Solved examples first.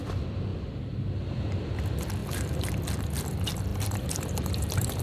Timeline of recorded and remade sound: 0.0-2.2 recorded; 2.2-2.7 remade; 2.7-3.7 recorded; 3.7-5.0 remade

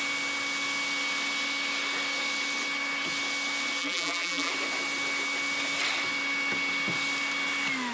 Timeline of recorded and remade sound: 0.0-3.8 recorded; 3.8-4.5 remade; 4.5-7.9 recorded

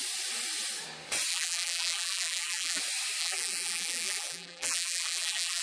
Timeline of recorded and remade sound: 0.0-1.3 recorded; 1.3-2.8 remade; 2.8-3.2 recorded; 3.2-5.6 remade

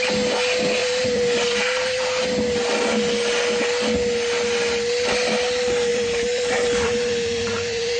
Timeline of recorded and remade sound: 0.0-0.8 recorded; 0.8-2.2 remade; 2.2-5.9 recorded; 5.9-8.0 remade

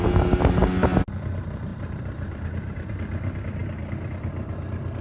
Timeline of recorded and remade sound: 0.0-1.7 recorded; 1.7-2.9 remade; 2.9-5.0 recorded

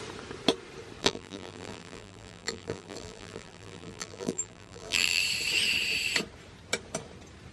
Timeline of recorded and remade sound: 0.0-1.0 recorded; 1.0-5.2 remade; 5.2-7.5 recorded